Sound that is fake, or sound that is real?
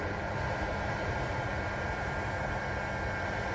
fake